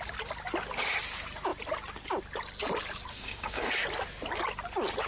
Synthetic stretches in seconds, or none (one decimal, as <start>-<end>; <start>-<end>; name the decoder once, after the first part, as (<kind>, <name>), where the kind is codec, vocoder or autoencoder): 3.1-3.7 (codec, DAC)